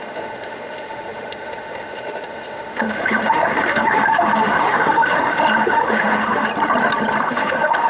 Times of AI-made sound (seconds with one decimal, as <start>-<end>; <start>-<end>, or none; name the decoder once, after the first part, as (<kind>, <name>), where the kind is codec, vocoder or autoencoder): 0.0-6.5 (autoencoder, DAC-VAE); 7.2-7.9